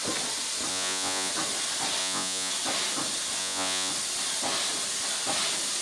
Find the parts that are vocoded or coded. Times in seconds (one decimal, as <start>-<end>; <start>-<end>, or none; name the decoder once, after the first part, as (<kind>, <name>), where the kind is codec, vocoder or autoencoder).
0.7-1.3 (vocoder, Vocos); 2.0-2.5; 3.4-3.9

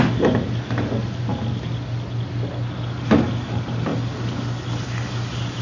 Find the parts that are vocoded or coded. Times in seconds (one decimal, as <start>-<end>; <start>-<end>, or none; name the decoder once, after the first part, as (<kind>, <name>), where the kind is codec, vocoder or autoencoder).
none

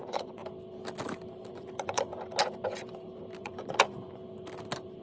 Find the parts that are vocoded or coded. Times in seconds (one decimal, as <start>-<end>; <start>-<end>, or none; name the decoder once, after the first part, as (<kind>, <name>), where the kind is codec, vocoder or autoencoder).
0.0-0.4 (vocoder, Vocos); 1.5-2.1; 3.4-4.2

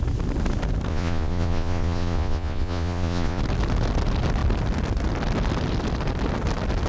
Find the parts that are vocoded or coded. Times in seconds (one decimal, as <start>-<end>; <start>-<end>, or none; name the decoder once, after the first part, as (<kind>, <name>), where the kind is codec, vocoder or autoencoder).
0.9-3.4 (vocoder, Vocos)